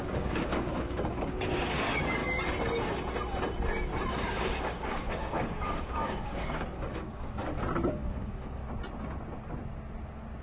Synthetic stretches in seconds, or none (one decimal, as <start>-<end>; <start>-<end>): 0.0-2.2; 4.1-7.4; 7.9-8.6

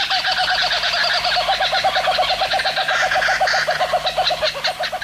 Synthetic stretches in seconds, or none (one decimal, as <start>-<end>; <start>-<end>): none